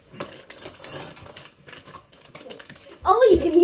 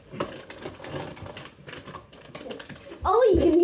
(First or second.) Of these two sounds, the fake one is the first